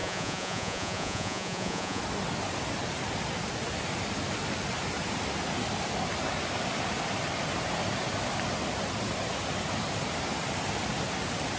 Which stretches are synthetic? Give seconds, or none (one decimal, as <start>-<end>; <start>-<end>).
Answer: 0.0-2.0